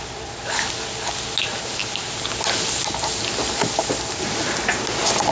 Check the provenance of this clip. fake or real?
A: real